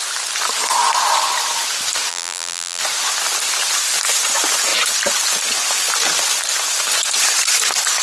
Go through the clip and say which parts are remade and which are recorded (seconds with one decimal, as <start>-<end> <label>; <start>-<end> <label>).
0.0-2.1 recorded; 2.1-2.8 remade; 2.8-8.0 recorded